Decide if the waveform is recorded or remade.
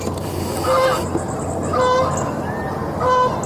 recorded